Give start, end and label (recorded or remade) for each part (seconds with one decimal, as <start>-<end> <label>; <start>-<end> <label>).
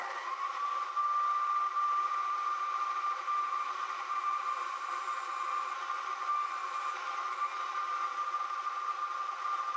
0.0-1.7 recorded; 1.7-4.9 remade; 4.9-6.6 recorded; 6.6-7.5 remade; 7.5-9.8 recorded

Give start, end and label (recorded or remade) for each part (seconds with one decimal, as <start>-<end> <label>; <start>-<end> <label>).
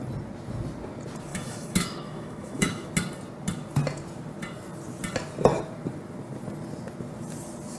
0.0-1.3 recorded; 1.3-2.9 remade; 2.9-7.8 recorded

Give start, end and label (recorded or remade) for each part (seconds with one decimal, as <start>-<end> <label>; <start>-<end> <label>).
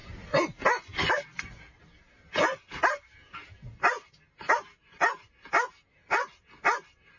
0.0-7.2 recorded